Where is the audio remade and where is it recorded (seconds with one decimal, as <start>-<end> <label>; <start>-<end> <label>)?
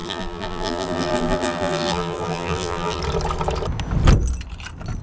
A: 0.0-3.0 remade; 3.0-5.0 recorded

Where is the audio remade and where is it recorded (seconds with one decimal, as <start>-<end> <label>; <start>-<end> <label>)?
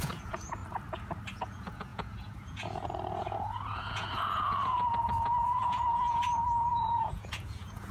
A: 0.0-0.6 remade; 0.6-1.3 recorded; 1.3-7.9 remade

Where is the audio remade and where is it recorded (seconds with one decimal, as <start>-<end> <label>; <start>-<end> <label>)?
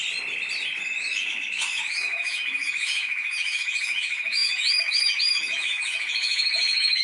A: 0.0-0.8 recorded; 0.8-7.0 remade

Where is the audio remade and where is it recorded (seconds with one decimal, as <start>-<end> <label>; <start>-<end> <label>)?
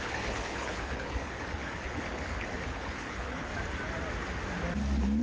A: 0.0-3.5 remade; 3.5-5.2 recorded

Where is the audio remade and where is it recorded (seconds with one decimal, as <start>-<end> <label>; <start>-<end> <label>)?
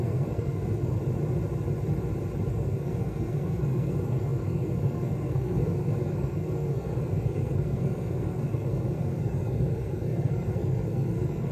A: 0.0-1.0 remade; 1.0-2.5 recorded; 2.5-11.5 remade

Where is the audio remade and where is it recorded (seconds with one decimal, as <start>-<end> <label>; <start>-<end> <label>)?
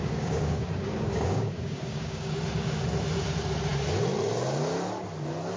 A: 0.0-2.4 remade; 2.4-5.6 recorded